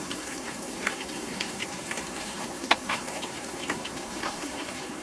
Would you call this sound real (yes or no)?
no